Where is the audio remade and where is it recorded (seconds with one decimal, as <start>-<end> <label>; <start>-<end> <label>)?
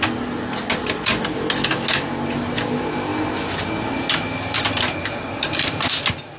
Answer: 0.0-6.4 recorded